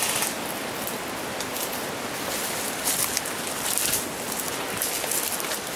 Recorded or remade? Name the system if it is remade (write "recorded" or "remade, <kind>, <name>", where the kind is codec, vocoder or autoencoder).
recorded